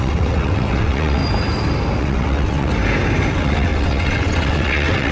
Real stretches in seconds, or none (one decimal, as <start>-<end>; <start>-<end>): 1.2-2.0; 2.7-3.3